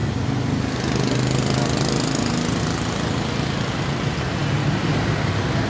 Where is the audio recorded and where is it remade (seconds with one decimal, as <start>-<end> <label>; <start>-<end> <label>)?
0.0-5.7 recorded